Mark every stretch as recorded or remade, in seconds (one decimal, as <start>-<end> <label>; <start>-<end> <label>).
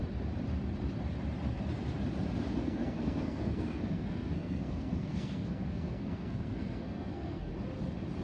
0.0-2.6 recorded; 2.6-7.5 remade; 7.5-8.2 recorded